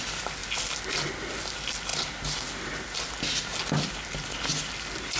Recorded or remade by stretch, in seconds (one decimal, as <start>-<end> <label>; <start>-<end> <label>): 0.0-5.2 recorded